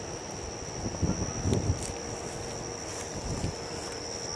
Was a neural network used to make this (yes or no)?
no